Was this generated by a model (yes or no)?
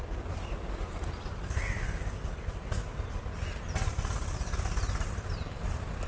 no